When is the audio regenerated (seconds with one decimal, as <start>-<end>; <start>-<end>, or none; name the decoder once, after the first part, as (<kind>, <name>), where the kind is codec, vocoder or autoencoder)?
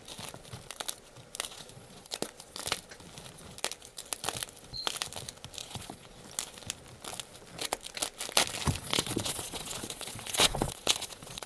1.5-2.1 (vocoder, Vocos); 5.6-6.2; 8.8-11.5